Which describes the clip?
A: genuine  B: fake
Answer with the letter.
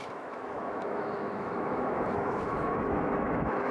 B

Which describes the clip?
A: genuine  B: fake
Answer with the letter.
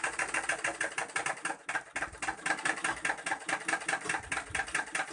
A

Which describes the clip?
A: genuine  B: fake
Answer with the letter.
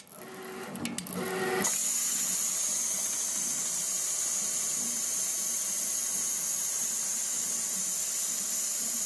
A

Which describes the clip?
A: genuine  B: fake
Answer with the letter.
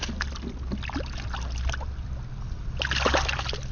A